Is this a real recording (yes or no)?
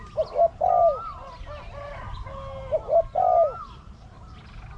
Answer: yes